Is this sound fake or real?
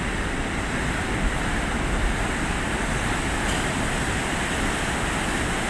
real